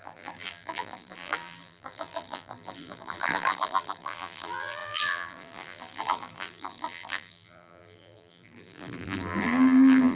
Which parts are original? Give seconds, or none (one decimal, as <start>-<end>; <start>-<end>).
none